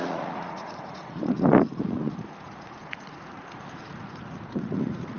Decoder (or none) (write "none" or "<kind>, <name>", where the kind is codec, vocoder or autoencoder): vocoder, Vocos